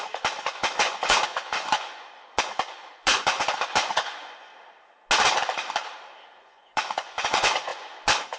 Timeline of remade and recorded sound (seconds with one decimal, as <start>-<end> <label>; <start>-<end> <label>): 0.0-4.5 remade; 4.5-6.3 recorded; 6.3-8.4 remade